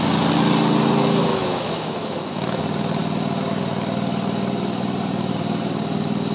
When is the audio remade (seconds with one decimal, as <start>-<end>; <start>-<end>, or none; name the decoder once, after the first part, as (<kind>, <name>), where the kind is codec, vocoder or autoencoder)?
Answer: 1.3-2.6 (autoencoder, DAC-VAE)